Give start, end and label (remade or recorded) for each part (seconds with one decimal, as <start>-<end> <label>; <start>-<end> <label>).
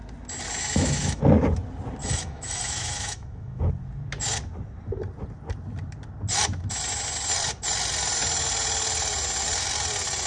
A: 0.0-0.6 recorded; 0.6-1.2 remade; 1.2-2.0 recorded; 2.0-3.6 remade; 3.6-10.3 recorded